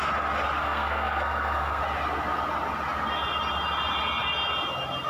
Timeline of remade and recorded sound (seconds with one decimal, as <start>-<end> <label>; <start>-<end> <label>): 0.0-0.6 recorded; 0.6-1.8 remade; 1.8-5.1 recorded